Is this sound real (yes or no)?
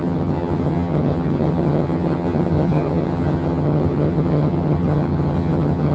no